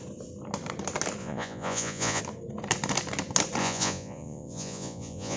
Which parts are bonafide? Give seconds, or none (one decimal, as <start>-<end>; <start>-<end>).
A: 0.0-1.2; 2.2-3.6